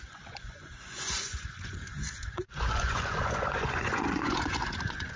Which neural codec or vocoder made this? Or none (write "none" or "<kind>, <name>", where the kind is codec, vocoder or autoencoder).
vocoder, Vocos